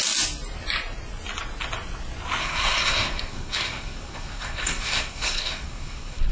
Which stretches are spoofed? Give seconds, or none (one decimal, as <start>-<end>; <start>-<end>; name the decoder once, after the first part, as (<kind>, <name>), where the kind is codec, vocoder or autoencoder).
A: 2.4-6.3 (codec, SNAC)